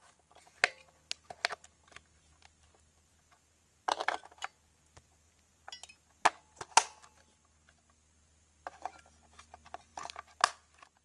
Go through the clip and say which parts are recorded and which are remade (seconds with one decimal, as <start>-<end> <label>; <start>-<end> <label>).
0.0-11.0 recorded